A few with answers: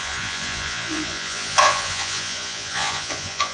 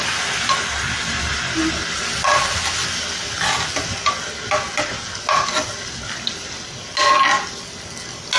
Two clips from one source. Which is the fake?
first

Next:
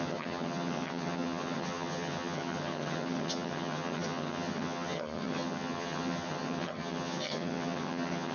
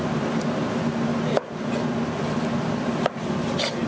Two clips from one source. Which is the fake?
first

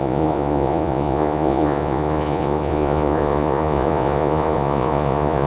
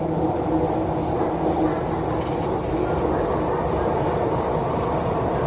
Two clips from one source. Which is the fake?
first